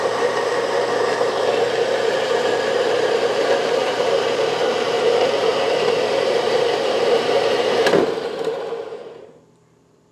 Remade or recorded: remade